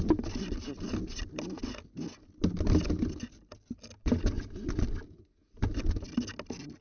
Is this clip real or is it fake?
real